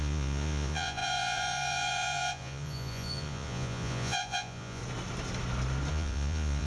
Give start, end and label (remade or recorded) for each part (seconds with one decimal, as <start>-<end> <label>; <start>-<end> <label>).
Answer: 0.0-4.8 remade; 4.8-5.9 recorded; 5.9-6.7 remade